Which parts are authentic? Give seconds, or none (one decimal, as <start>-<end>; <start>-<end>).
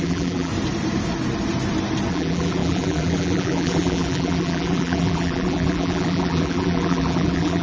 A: 0.5-2.1